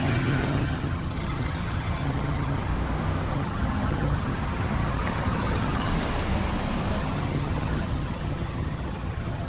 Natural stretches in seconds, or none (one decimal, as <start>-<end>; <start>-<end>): 2.7-3.3; 5.9-7.0